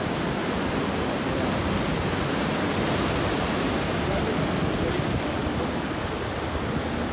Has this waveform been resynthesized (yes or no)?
no